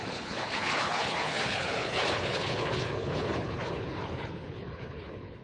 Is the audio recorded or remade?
remade